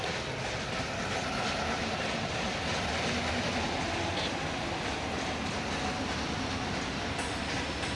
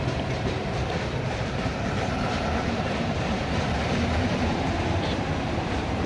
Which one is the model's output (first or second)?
second